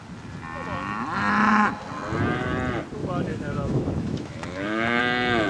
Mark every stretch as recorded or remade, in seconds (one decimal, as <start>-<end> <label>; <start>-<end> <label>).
0.0-3.0 recorded; 3.0-5.0 remade; 5.0-5.5 recorded